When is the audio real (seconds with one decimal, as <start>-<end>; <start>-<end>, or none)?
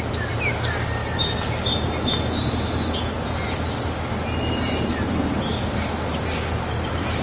0.0-7.2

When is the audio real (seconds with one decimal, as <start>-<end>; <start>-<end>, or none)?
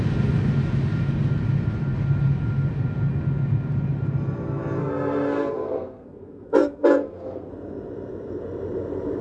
0.0-4.8; 7.5-9.2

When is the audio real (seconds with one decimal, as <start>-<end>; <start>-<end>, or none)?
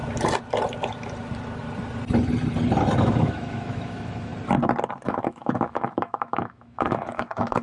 0.0-3.0; 4.3-5.1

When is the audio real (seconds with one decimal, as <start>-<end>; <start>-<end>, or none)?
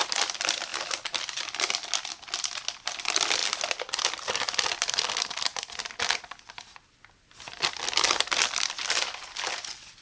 3.4-4.4; 5.5-7.7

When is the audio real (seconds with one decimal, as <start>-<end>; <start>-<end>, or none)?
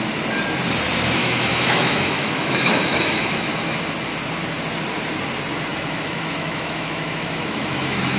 0.0-1.2; 3.8-5.7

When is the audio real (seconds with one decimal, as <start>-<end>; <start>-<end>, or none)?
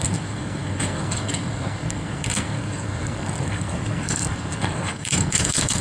none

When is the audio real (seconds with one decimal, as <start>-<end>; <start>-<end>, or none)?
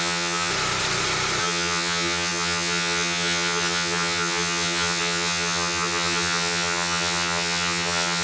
0.5-1.4